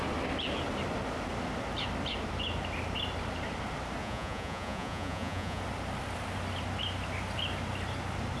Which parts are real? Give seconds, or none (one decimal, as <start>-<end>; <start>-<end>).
0.0-4.0; 5.6-8.4